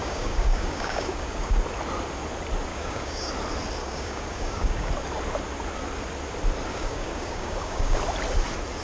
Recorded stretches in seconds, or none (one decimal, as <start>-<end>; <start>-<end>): 1.6-2.7; 3.3-3.8; 4.9-6.7; 8.0-8.8